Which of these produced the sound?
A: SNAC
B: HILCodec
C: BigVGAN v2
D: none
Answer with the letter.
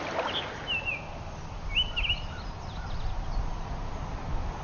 D